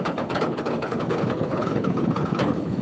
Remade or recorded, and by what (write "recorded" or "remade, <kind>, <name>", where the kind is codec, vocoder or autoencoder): remade, codec, HILCodec